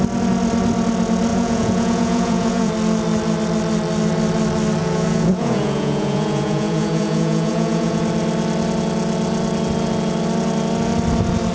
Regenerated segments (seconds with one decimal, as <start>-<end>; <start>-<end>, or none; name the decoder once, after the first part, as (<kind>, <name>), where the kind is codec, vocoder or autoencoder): 1.3-2.7 (vocoder, Vocos); 4.8-8.0